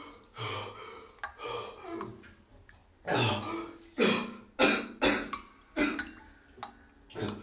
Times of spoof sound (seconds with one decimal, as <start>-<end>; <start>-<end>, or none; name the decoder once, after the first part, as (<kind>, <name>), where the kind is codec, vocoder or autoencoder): none